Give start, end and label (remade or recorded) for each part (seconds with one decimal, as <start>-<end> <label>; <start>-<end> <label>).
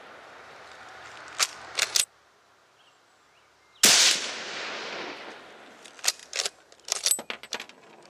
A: 0.0-8.1 recorded